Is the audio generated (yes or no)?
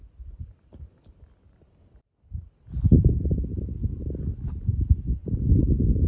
no